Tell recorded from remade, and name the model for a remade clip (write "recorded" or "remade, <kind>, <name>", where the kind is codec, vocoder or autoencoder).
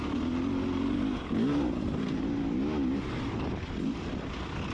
recorded